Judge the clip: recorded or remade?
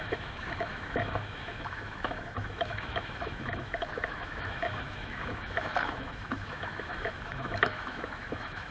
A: remade